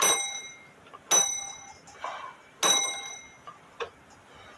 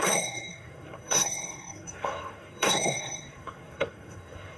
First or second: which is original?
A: first